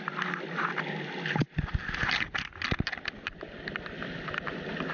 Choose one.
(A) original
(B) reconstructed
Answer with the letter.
A